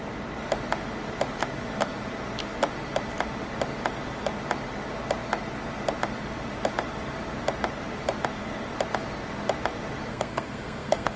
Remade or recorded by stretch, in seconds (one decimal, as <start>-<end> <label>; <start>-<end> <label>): 0.0-10.1 recorded; 10.1-11.2 remade